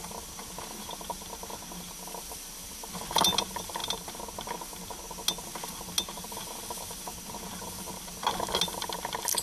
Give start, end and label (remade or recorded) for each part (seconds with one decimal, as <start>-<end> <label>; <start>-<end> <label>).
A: 0.0-9.4 recorded